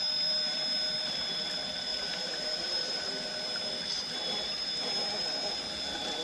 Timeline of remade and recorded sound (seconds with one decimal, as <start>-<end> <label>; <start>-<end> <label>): 0.0-1.9 recorded; 1.9-3.1 remade; 3.1-6.2 recorded